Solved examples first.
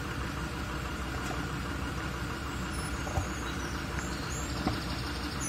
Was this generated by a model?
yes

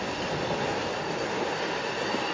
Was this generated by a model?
no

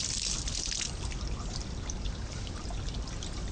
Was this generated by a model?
no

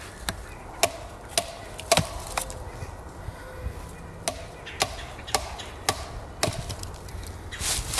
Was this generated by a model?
no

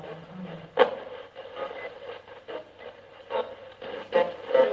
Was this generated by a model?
no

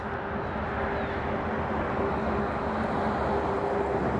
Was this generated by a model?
no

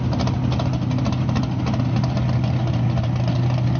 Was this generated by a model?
no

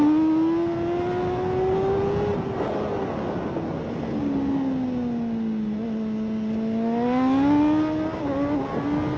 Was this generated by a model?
no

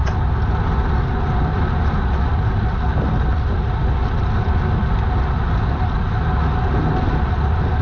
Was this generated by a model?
no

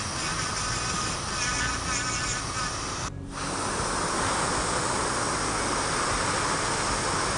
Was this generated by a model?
no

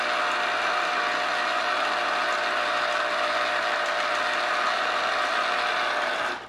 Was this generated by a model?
no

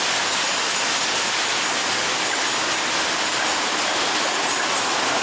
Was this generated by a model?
no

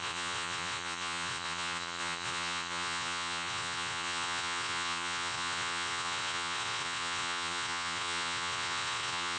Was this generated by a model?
yes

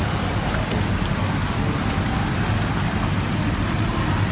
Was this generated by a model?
no